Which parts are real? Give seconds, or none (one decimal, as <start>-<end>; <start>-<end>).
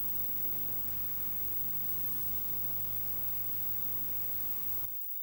1.9-2.4